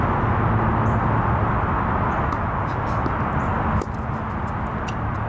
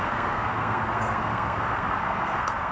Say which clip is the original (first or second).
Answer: first